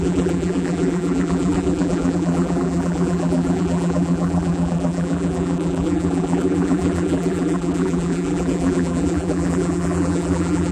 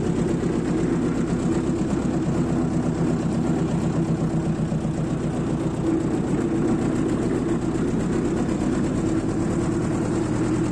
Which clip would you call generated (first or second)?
first